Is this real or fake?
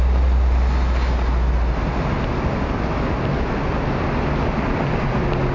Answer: real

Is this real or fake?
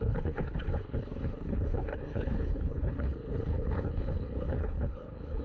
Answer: fake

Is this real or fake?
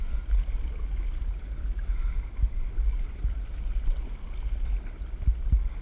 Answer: real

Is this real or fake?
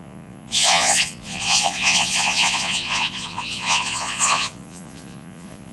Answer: fake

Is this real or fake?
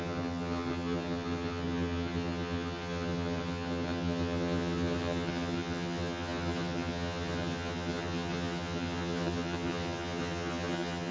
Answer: fake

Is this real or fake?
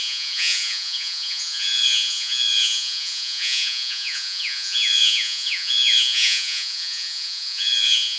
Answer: fake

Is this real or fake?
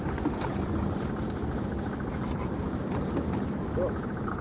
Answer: real